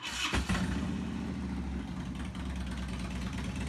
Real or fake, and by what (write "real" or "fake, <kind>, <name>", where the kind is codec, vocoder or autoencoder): real